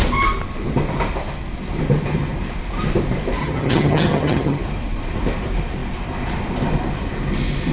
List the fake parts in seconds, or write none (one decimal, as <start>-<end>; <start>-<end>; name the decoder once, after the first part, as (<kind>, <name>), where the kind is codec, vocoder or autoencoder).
3.4-4.6 (vocoder, HiFi-GAN)

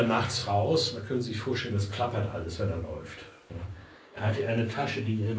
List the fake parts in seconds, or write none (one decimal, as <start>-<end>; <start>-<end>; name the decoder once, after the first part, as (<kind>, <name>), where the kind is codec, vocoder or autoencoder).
3.7-5.4 (codec, DAC)

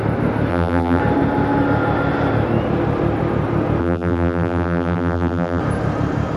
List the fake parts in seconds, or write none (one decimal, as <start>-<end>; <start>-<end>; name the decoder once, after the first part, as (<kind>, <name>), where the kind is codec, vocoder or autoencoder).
0.5-1.0 (vocoder, BigVGAN v2); 3.8-5.6

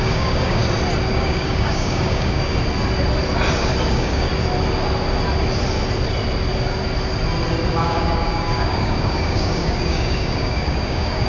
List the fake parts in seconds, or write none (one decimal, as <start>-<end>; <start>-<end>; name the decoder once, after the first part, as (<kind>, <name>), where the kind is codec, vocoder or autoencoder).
0.0-0.6 (codec, DAC); 1.1-2.5; 3.9-4.3; 7.8-11.3

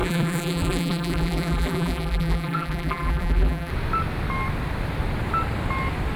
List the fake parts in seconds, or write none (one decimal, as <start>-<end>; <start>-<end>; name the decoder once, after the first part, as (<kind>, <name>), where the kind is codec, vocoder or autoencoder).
0.0-3.7 (vocoder, BigVGAN v2)